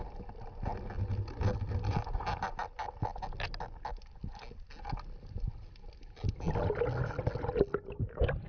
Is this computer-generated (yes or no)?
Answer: no